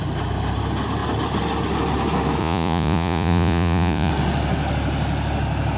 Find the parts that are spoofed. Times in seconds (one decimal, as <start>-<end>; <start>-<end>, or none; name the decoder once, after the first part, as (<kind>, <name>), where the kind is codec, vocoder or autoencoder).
2.4-4.1 (vocoder, Vocos)